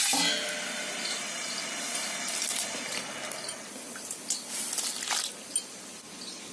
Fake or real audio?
real